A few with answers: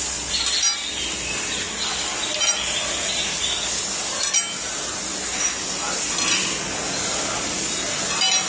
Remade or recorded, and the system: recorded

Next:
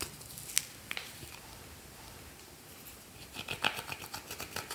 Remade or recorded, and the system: recorded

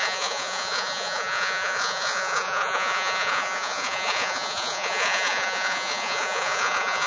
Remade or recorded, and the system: remade, vocoder, Vocos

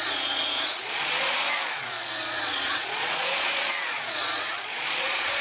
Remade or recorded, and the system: remade, vocoder, Vocos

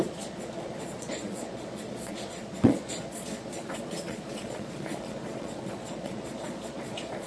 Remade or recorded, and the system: remade, vocoder, Vocos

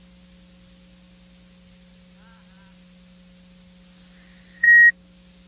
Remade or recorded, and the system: recorded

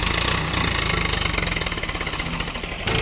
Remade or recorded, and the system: recorded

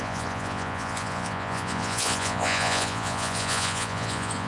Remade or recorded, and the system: remade, vocoder, Vocos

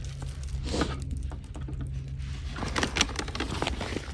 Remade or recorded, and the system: recorded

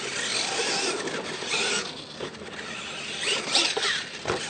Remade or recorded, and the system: recorded